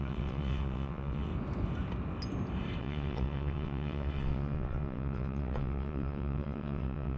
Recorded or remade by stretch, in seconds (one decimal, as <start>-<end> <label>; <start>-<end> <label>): 0.0-1.3 remade; 1.3-2.8 recorded; 2.8-7.2 remade